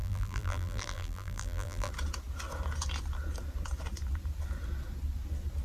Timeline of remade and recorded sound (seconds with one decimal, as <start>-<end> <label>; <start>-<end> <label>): 0.0-1.9 remade; 1.9-5.6 recorded